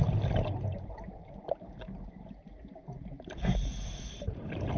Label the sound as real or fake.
real